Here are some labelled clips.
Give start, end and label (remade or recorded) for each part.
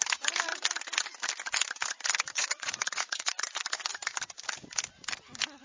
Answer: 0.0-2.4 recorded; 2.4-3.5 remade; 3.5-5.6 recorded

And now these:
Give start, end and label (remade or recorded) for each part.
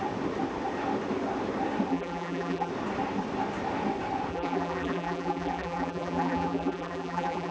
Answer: 0.0-1.9 recorded; 1.9-2.7 remade; 2.7-4.3 recorded; 4.3-7.5 remade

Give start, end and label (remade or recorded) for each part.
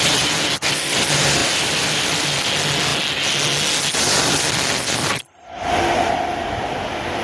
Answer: 0.0-1.4 recorded; 1.4-2.5 remade; 2.5-7.2 recorded